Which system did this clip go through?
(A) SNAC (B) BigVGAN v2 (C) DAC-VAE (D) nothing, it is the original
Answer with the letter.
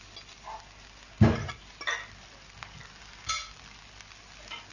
D